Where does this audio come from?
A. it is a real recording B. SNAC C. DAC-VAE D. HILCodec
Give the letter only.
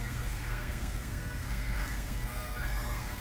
B